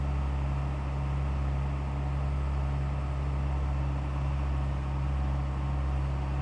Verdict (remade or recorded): recorded